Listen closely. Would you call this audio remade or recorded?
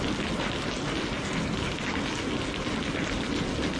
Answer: recorded